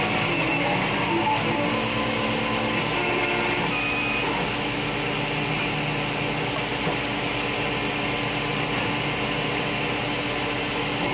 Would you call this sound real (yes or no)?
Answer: no